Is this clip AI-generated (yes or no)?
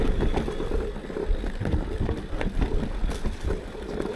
no